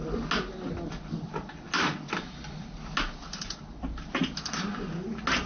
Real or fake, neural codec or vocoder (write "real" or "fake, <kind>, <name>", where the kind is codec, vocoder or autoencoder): real